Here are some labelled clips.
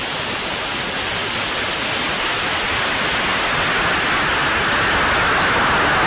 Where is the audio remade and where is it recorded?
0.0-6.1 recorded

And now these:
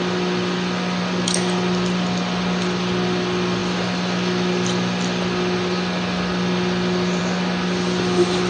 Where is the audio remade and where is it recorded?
0.0-8.5 recorded

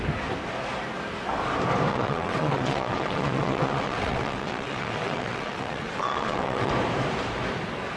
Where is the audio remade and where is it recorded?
0.0-1.9 recorded; 1.9-6.7 remade; 6.7-8.0 recorded

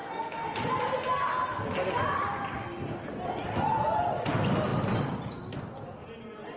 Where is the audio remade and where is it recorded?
0.0-6.6 recorded

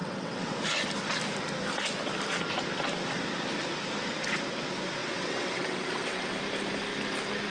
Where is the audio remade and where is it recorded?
0.0-0.6 remade; 0.6-5.0 recorded; 5.0-6.4 remade; 6.4-7.5 recorded